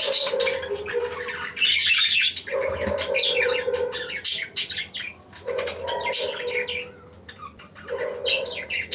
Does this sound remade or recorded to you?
recorded